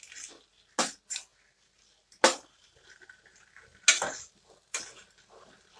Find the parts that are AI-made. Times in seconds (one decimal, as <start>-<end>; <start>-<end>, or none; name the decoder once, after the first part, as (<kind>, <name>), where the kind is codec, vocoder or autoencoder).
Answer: none